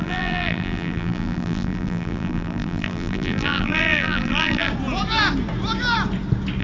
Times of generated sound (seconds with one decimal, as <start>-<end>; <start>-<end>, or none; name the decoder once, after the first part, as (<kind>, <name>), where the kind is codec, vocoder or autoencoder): 0.0-4.7 (vocoder, BigVGAN v2)